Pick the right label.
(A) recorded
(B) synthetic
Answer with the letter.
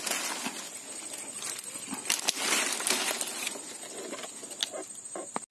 A